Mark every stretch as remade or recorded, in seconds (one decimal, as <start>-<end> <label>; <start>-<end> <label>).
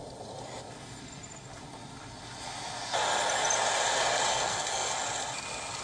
0.0-4.3 recorded; 4.3-4.9 remade; 4.9-5.8 recorded